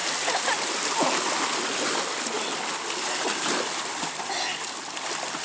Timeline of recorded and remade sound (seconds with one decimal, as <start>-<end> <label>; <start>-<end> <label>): 0.0-5.4 recorded